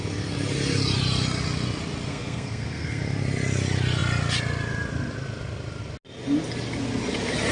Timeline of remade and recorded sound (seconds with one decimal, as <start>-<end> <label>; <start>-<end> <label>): 0.0-2.1 recorded; 2.1-3.0 remade; 3.0-7.5 recorded